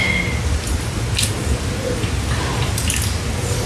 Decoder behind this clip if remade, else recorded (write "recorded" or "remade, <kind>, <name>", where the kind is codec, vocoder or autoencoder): recorded